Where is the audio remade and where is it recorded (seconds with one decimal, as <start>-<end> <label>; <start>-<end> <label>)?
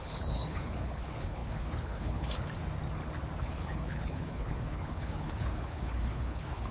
0.0-2.6 remade; 2.6-3.4 recorded; 3.4-6.7 remade